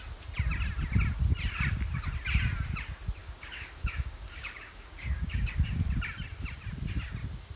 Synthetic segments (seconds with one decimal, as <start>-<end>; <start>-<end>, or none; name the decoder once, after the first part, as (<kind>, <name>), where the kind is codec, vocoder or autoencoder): 3.2-5.5 (codec, DAC)